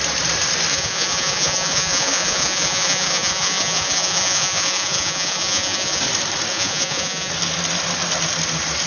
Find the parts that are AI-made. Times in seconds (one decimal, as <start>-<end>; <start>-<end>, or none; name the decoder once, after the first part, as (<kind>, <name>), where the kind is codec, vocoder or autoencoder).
0.7-6.0 (vocoder, Vocos); 6.5-7.3